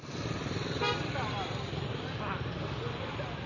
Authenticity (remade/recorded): recorded